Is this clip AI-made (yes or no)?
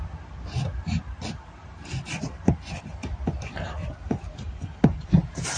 no